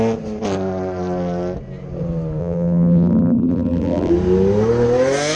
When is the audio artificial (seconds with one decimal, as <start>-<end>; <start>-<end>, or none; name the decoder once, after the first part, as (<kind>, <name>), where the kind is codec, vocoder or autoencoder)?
2.4-4.1 (vocoder, BigVGAN v2)